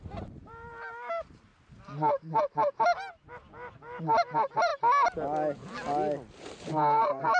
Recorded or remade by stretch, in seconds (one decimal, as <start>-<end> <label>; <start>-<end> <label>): 0.0-1.5 remade; 1.5-2.1 recorded; 2.1-4.7 remade; 4.7-6.7 recorded; 6.7-7.4 remade